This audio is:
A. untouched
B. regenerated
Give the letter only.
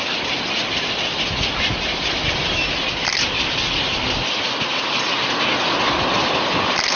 A